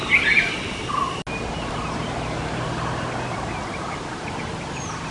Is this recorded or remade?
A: recorded